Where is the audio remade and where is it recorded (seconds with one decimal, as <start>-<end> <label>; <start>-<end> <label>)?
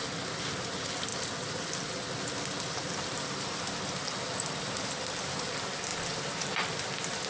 0.0-5.9 recorded; 5.9-6.8 remade; 6.8-7.3 recorded